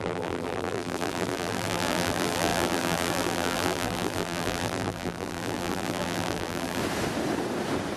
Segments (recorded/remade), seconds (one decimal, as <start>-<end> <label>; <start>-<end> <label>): 0.0-6.8 remade; 6.8-8.0 recorded